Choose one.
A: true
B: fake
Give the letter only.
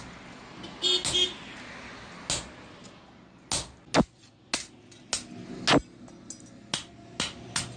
A